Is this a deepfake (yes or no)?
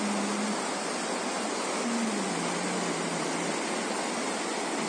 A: no